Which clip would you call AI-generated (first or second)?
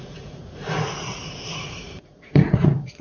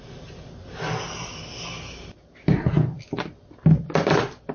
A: first